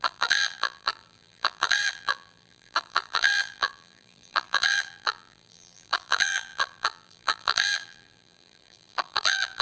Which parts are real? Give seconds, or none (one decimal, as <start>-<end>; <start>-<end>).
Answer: none